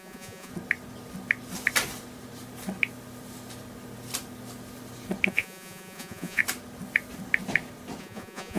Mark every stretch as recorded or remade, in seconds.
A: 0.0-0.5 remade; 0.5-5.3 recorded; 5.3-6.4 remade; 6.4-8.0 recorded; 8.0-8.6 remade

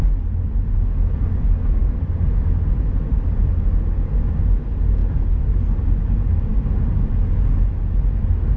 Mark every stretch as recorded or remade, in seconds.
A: 0.0-5.0 recorded; 5.0-5.8 remade; 5.8-8.6 recorded

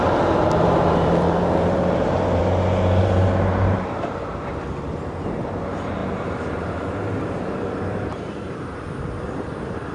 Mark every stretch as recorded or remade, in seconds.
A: 0.0-2.4 remade; 2.4-3.0 recorded; 3.0-9.9 remade

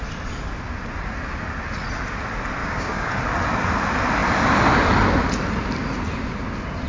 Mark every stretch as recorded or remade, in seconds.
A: 0.0-2.6 recorded; 2.6-3.1 remade; 3.1-6.9 recorded

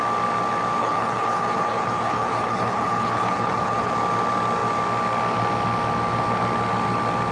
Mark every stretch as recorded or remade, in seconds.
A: 0.0-0.8 recorded; 0.8-3.9 remade; 3.9-7.3 recorded